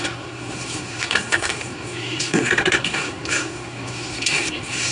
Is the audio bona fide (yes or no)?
no